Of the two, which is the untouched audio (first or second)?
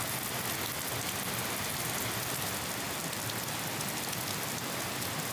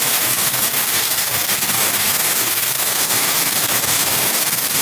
first